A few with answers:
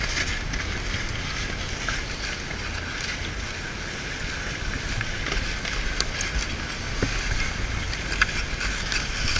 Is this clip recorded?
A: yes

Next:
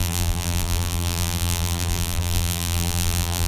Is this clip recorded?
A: no